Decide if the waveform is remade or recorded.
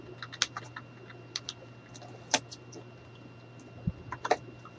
recorded